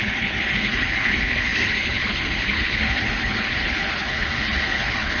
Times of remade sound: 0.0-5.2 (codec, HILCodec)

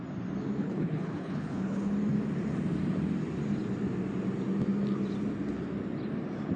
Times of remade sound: 0.6-1.9 (codec, HILCodec)

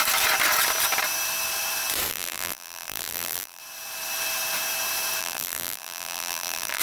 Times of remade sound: 2.1-3.6 (vocoder, BigVGAN v2); 5.2-6.8